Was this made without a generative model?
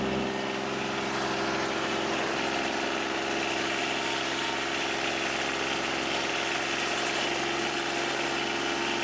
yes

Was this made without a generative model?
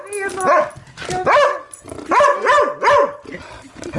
yes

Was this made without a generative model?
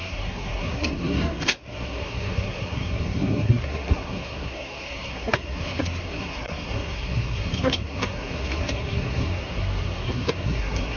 no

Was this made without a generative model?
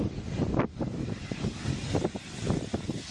yes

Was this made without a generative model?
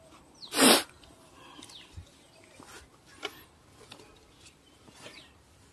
yes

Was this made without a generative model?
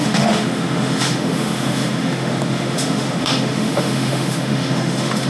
no